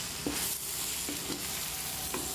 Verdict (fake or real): real